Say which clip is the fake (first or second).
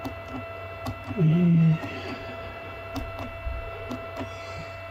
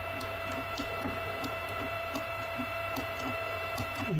second